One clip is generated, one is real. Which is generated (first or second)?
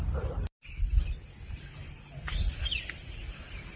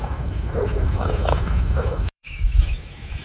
second